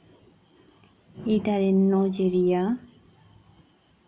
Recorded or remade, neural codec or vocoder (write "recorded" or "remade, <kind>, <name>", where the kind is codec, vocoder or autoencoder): recorded